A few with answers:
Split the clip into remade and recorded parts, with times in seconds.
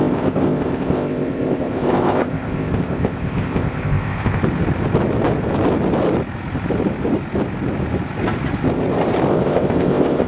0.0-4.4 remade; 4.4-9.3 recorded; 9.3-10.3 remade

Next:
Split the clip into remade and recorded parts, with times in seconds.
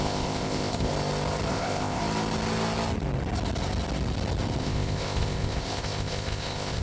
0.0-0.9 remade; 0.9-1.5 recorded; 1.5-2.0 remade; 2.0-4.6 recorded; 4.6-6.8 remade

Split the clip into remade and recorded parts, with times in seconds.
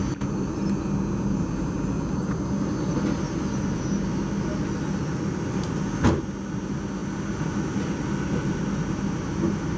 0.0-9.8 recorded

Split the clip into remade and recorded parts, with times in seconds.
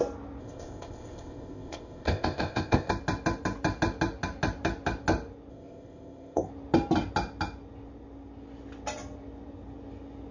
0.0-0.4 recorded; 0.4-2.9 remade; 2.9-5.5 recorded; 5.5-6.5 remade; 6.5-10.3 recorded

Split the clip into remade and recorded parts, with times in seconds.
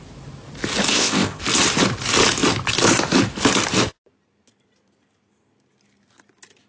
0.0-0.9 recorded; 0.9-1.4 remade; 1.4-6.7 recorded